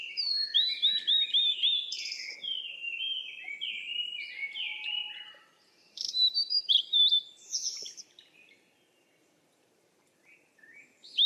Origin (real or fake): fake